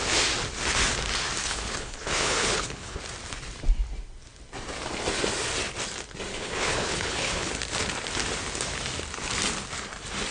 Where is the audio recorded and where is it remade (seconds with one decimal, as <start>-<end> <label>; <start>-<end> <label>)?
0.0-1.4 recorded; 1.4-3.0 remade; 3.0-6.3 recorded; 6.3-7.5 remade; 7.5-10.3 recorded